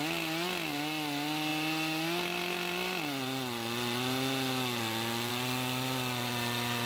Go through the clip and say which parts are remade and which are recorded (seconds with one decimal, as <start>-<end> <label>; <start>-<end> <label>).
0.0-6.9 recorded